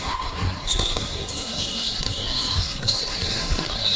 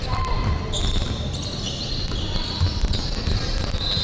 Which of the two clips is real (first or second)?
second